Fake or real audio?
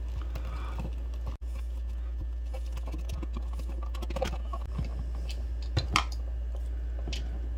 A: real